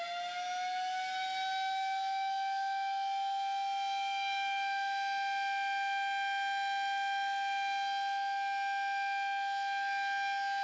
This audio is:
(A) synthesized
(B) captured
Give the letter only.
B